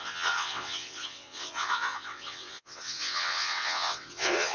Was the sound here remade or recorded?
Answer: remade